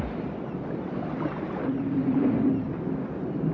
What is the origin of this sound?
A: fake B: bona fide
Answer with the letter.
B